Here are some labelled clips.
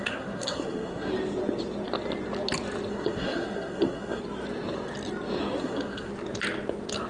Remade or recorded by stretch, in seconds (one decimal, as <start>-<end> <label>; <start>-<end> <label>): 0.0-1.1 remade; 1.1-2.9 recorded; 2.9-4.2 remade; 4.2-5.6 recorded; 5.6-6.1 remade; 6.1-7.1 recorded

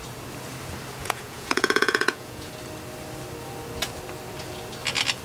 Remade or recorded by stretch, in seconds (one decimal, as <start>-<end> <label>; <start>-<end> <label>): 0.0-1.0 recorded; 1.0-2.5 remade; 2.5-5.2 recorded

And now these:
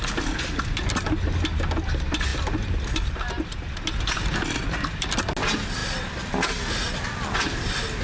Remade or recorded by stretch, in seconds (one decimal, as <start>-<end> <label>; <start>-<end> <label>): 0.0-8.0 recorded

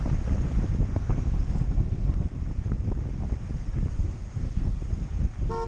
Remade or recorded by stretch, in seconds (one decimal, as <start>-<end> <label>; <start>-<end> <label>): 0.0-0.9 recorded; 0.9-2.4 remade; 2.4-4.0 recorded; 4.0-4.8 remade; 4.8-5.7 recorded